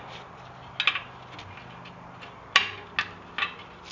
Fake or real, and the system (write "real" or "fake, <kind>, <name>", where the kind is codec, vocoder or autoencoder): real